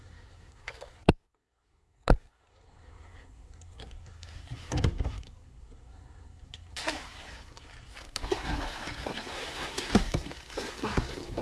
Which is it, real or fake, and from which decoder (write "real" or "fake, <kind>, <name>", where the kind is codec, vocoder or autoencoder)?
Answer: fake, codec, SNAC